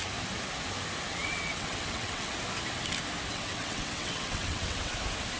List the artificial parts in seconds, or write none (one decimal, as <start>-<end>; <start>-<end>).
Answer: 1.1-2.3; 3.3-4.9